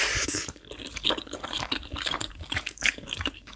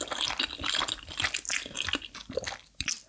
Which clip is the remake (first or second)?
first